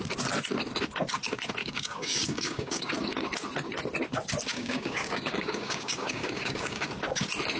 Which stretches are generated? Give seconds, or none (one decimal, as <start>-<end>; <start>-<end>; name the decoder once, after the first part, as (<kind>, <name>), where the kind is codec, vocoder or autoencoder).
1.6-2.9 (codec, DAC); 4.5-6.9